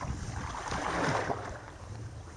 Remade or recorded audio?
recorded